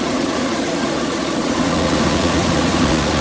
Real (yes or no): no